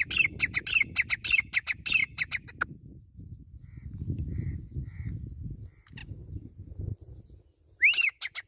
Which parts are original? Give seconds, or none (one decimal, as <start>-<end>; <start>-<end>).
0.0-2.0; 2.6-8.5